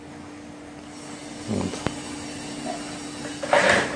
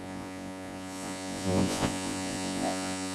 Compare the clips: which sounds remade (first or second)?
second